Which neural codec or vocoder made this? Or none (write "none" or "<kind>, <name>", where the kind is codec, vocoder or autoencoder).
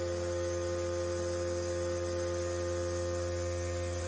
none